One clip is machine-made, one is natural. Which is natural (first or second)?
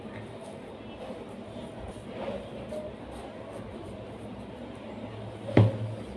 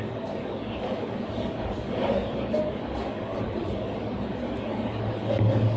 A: first